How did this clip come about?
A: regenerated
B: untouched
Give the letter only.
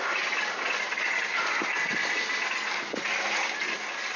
B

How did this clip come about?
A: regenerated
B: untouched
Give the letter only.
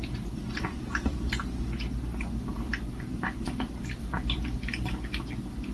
B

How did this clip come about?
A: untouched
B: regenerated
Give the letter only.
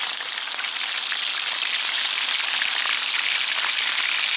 A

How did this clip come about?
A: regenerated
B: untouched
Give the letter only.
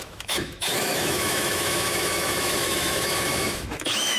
A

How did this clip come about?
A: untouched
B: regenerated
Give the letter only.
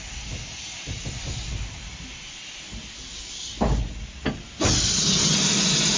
A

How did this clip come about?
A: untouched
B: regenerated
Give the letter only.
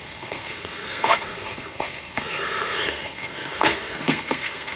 B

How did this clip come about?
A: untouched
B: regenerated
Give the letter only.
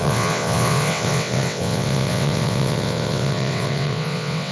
B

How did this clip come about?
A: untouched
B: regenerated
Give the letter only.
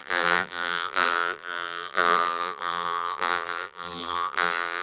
B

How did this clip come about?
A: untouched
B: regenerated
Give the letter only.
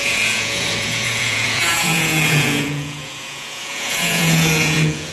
B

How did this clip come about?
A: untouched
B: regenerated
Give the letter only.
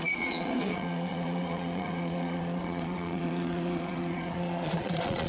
B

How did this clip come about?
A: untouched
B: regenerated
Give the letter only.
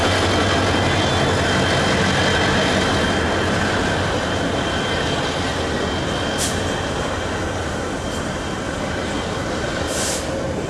A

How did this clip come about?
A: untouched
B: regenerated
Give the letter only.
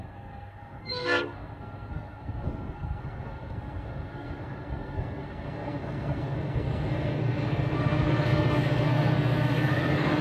B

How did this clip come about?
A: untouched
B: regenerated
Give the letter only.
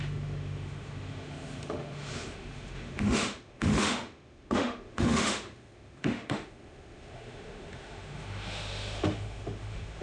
B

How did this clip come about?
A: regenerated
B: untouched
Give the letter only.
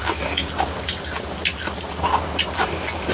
B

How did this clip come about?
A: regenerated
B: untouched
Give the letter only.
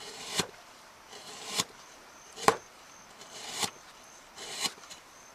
A